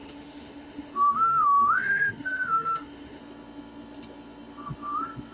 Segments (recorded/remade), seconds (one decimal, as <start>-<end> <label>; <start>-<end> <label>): 0.0-3.2 remade; 3.2-5.3 recorded